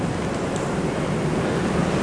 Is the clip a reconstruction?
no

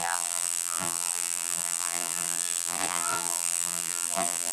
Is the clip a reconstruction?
yes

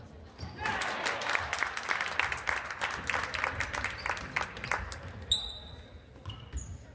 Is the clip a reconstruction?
no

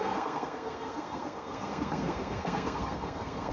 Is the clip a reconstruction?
yes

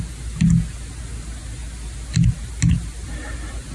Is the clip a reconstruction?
no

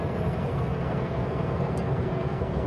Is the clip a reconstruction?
yes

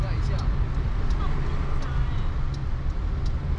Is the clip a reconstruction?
no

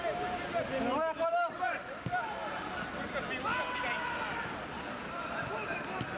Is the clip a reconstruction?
no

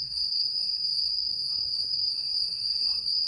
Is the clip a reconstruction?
yes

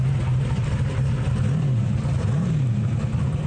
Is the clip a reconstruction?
no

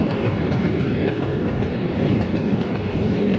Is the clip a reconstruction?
yes